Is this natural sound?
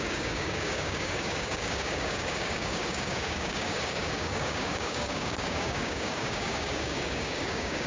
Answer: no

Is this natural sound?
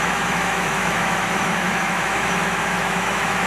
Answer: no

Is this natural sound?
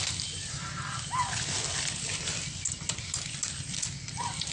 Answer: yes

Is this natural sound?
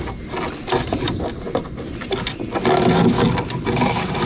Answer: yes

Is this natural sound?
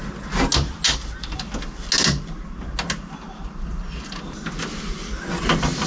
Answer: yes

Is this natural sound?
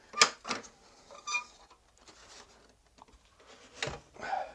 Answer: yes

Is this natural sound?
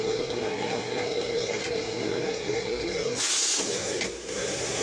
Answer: no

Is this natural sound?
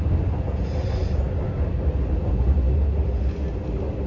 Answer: yes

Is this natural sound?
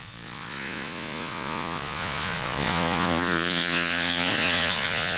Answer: no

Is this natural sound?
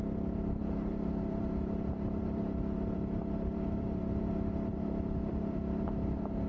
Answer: no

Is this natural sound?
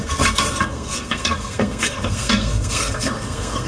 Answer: no